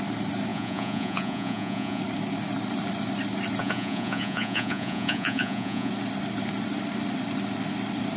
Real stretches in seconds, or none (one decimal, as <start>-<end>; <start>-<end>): 0.0-0.5; 2.0-3.6; 5.9-8.2